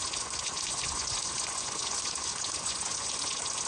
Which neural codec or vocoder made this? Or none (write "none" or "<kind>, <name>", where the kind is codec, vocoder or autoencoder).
vocoder, Vocos